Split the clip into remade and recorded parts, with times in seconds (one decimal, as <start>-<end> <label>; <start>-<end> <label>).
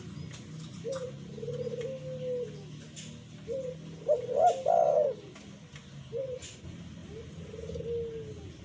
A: 0.0-8.6 recorded